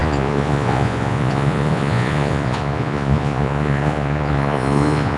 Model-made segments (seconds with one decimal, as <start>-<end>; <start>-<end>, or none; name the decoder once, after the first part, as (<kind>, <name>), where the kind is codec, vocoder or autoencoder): 0.0-5.2 (vocoder, Vocos)